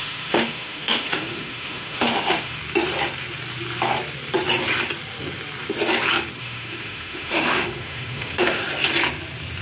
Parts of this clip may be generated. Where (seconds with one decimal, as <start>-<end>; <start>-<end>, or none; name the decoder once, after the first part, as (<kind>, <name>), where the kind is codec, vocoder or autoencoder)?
0.0-2.6 (autoencoder, DAC-VAE); 6.4-8.6